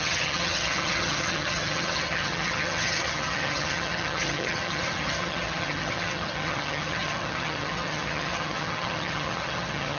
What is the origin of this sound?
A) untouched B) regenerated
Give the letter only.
B